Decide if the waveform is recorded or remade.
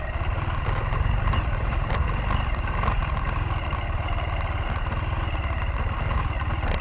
recorded